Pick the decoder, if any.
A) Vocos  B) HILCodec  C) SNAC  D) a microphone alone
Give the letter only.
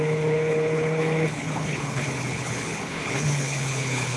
B